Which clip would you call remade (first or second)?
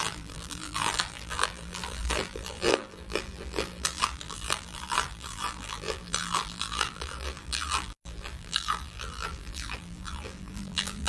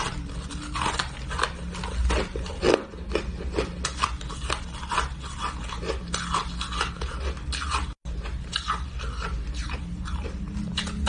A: first